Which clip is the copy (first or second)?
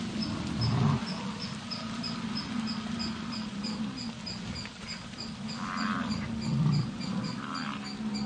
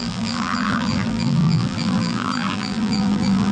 second